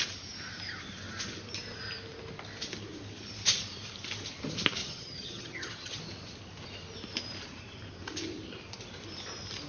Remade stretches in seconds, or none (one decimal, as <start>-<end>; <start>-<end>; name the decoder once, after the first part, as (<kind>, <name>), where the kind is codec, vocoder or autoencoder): 4.8-6.0 (vocoder, HiFi-GAN)